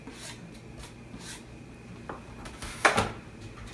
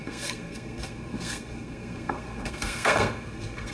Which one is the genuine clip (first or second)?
first